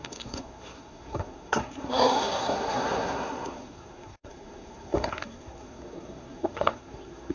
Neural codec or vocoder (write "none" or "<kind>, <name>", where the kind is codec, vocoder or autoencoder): codec, SNAC